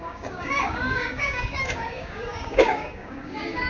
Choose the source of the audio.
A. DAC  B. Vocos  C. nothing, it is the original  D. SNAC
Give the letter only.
A